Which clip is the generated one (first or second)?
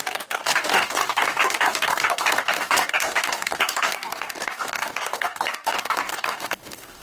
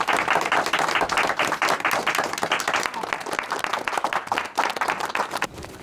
first